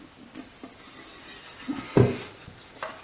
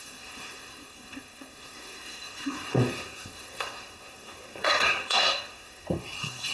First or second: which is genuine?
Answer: first